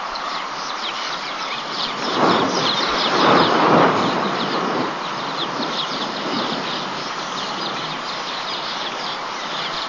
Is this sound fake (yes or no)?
yes